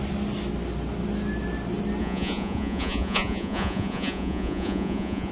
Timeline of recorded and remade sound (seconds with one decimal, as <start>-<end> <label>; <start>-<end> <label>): 0.0-2.0 recorded; 2.0-5.3 remade